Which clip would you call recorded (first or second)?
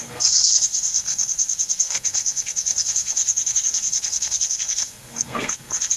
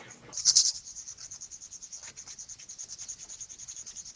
second